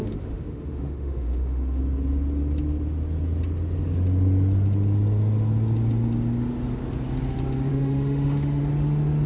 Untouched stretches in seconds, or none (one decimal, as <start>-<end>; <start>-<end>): 1.8-7.7; 8.6-9.3